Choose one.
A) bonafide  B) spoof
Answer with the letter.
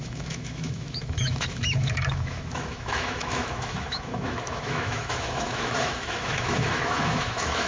B